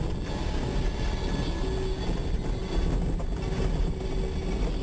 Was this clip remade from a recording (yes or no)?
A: no